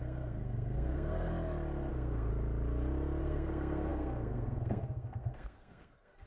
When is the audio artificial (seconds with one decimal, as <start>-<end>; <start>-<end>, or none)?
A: 0.0-1.3; 1.9-2.3; 3.2-6.3